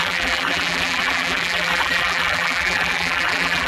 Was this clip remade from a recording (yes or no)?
yes